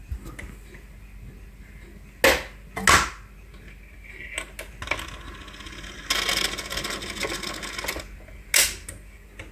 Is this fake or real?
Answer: real